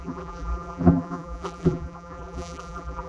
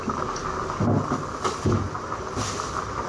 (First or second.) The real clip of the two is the second